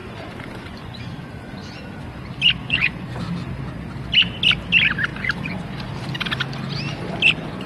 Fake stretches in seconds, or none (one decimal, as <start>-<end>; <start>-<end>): 0.0-2.1; 2.6-3.2; 5.1-5.9